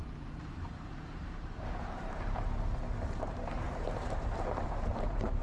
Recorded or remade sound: remade